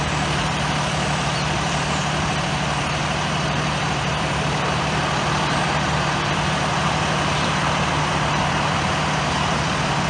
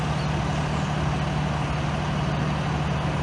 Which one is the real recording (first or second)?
second